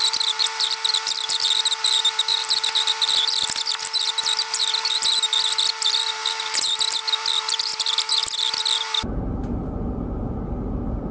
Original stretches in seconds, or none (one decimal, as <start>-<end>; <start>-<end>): 0.0-11.1

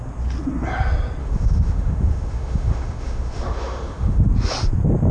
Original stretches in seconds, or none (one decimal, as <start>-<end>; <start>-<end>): 0.0-1.2; 4.3-5.1

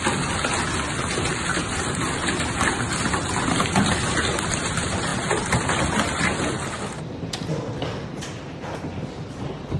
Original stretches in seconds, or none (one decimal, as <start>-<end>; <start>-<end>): 0.0-9.8